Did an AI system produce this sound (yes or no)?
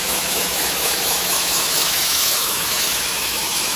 yes